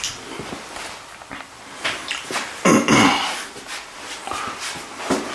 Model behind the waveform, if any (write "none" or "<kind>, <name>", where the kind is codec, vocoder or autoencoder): vocoder, BigVGAN v2